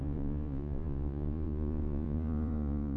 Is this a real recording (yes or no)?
no